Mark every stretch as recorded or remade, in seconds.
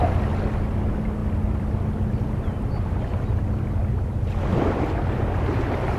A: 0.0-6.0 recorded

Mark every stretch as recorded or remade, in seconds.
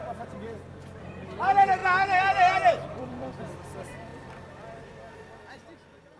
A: 0.0-1.8 remade; 1.8-3.0 recorded; 3.0-4.1 remade; 4.1-5.1 recorded; 5.1-6.2 remade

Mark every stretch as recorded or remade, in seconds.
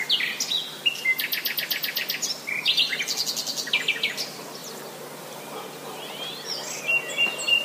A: 0.0-7.6 recorded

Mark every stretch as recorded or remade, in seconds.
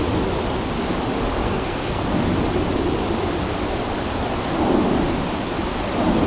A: 0.0-1.4 recorded; 1.4-2.1 remade; 2.1-6.3 recorded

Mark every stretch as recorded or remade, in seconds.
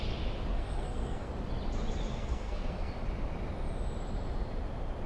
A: 0.0-0.5 recorded; 0.5-1.3 remade; 1.3-2.1 recorded; 2.1-2.9 remade; 2.9-5.1 recorded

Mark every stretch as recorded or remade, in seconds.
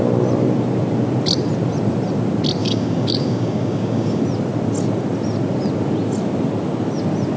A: 0.0-2.6 recorded; 2.6-4.2 remade; 4.2-7.4 recorded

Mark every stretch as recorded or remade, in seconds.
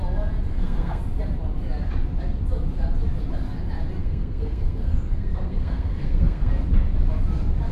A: 0.0-0.5 recorded; 0.5-1.0 remade; 1.0-4.0 recorded; 4.0-6.5 remade; 6.5-7.7 recorded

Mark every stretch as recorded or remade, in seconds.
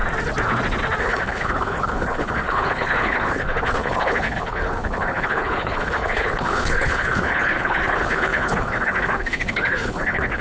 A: 0.0-1.0 recorded; 1.0-10.4 remade